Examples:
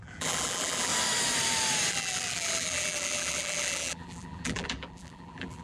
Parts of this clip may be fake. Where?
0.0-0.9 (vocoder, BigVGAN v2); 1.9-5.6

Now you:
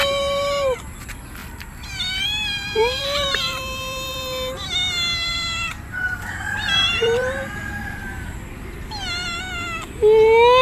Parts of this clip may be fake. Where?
1.4-4.2 (vocoder, BigVGAN v2); 5.3-9.4

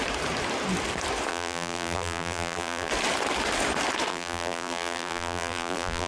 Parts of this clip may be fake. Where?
1.3-2.9 (vocoder, BigVGAN v2); 4.1-6.1